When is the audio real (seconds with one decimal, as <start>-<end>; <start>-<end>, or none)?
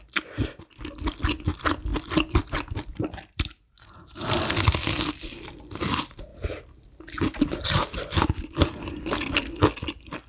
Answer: 0.0-10.3